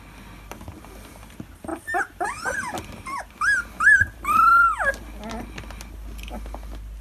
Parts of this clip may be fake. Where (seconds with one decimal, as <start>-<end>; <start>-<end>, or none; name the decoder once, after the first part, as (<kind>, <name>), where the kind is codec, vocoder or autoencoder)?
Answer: 1.7-3.3 (vocoder, BigVGAN v2)